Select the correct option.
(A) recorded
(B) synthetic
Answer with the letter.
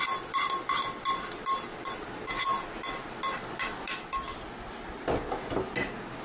A